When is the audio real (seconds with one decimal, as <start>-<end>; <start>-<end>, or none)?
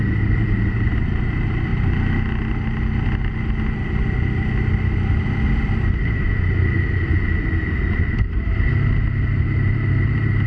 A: 1.7-5.1; 8.7-9.4